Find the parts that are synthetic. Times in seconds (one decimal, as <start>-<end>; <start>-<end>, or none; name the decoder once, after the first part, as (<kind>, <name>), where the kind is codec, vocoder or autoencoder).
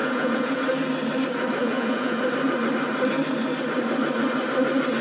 0.0-0.6 (vocoder, Vocos); 1.6-2.2